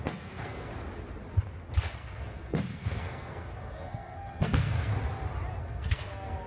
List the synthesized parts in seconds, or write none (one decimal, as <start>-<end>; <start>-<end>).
0.0-0.7; 1.8-4.9; 5.6-6.5